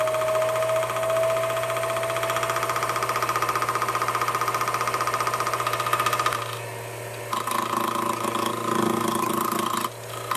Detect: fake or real real